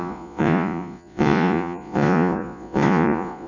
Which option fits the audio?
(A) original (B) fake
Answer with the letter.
B